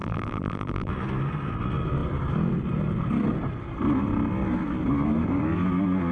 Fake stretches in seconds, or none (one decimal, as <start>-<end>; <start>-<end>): 0.0-0.9